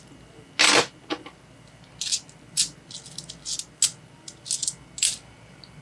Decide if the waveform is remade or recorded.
recorded